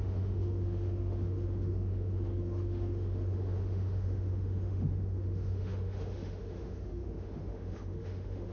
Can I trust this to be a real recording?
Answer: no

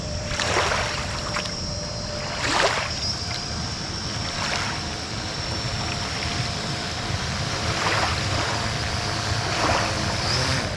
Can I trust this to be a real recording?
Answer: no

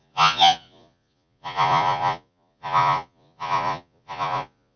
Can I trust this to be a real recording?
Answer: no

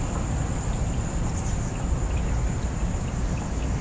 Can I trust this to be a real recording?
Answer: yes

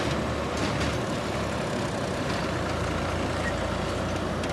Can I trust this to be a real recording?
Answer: yes